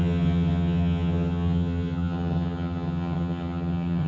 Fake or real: fake